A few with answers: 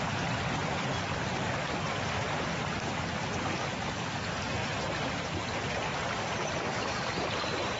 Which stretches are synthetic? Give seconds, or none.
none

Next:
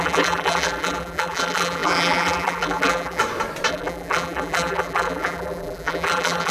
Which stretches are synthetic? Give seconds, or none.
0.0-3.2 (vocoder, BigVGAN v2); 3.7-6.5

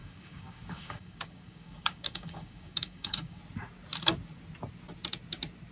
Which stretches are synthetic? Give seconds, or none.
0.0-3.4 (codec, DAC)

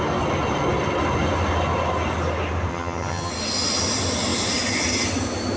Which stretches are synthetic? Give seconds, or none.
2.7-3.3 (vocoder, HiFi-GAN)

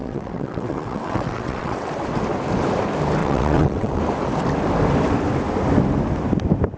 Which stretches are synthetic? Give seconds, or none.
0.0-1.9 (vocoder, WaveNeXt); 3.2-4.0

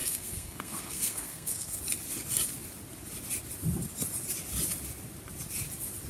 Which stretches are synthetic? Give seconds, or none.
0.0-1.8 (codec, SNAC)

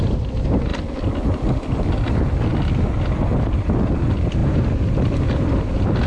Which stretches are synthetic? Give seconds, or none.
none